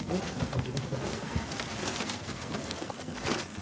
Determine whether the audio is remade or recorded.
remade